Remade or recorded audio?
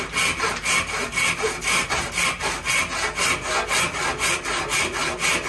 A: recorded